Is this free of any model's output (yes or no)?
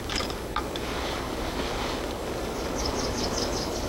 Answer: no